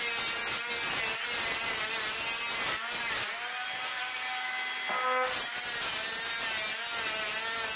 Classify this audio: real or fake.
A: real